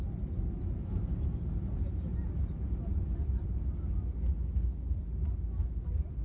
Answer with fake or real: real